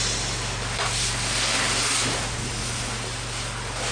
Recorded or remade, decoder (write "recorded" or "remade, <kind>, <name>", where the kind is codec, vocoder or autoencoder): recorded